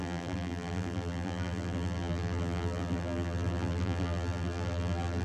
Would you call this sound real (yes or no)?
no